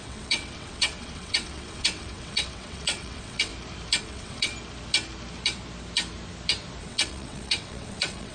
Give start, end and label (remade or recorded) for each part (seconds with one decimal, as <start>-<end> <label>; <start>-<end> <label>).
0.0-3.5 remade; 3.5-4.0 recorded; 4.0-4.5 remade; 4.5-6.8 recorded; 6.8-8.3 remade